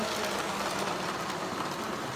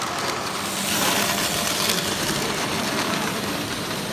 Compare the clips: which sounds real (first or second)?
first